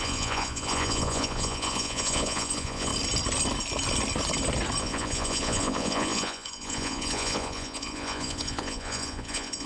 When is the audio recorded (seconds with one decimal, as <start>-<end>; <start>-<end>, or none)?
2.9-4.8